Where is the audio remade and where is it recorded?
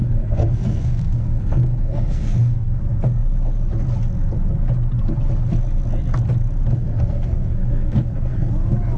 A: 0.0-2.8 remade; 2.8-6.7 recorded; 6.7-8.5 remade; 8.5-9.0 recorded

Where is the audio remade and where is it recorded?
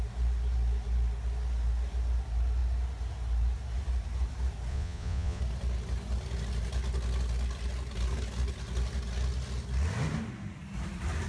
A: 0.0-4.7 recorded; 4.7-5.4 remade; 5.4-11.3 recorded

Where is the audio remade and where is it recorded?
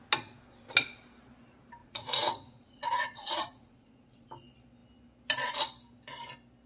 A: 0.0-1.8 recorded; 1.8-4.3 remade; 4.3-6.7 recorded